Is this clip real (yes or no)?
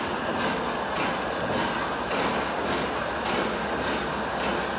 yes